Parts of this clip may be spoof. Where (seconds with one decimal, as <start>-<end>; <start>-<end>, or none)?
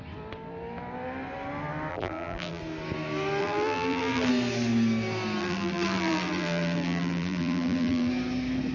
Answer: 1.9-2.6; 3.4-4.3; 5.4-8.1